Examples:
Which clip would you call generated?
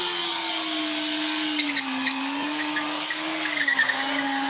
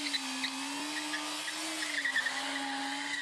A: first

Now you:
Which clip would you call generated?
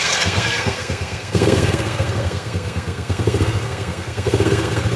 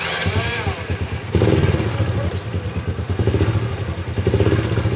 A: first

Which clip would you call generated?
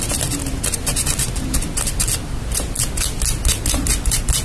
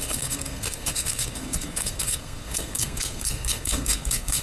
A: second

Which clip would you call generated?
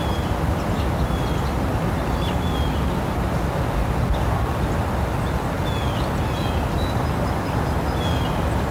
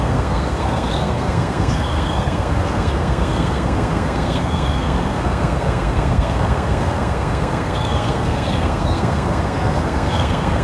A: second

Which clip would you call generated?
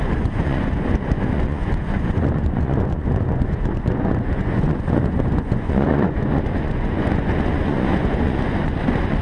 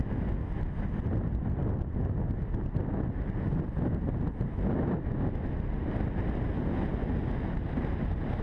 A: first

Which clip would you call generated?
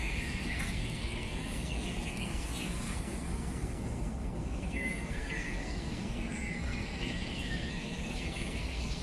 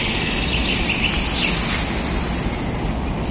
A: first